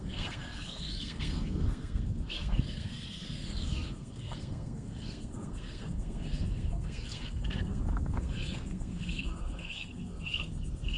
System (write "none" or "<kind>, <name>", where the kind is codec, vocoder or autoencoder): codec, SNAC